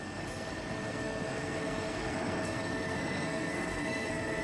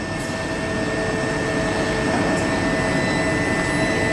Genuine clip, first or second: second